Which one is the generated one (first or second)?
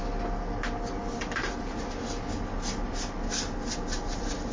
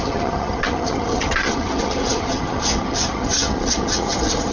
second